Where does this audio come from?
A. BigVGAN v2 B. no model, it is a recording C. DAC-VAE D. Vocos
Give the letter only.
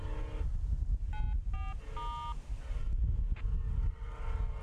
B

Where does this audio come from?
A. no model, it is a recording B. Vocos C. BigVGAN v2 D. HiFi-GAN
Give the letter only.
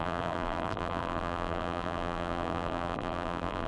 C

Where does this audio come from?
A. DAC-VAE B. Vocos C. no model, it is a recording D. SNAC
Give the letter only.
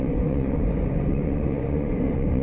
B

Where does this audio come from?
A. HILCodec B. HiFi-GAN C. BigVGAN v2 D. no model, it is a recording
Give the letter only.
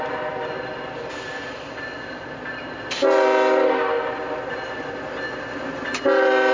D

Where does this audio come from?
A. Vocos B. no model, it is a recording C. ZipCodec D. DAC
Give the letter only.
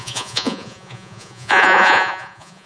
A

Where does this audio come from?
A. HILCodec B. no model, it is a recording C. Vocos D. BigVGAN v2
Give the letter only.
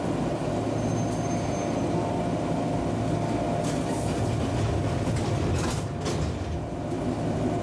B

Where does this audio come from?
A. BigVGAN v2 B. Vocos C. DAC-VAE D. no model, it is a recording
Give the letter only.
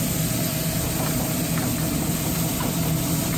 D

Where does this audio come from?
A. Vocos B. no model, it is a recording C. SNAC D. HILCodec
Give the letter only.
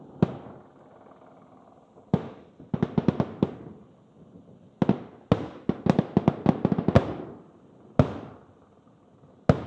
B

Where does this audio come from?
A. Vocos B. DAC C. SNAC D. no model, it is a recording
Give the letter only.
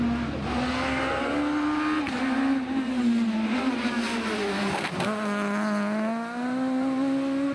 D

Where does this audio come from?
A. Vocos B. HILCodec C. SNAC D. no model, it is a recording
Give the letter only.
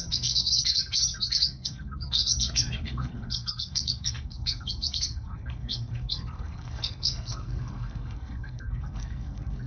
C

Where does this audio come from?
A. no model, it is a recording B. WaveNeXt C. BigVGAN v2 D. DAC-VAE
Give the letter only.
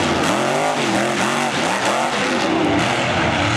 A